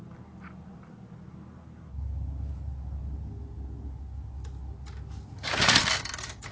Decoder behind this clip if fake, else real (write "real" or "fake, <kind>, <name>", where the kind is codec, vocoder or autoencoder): real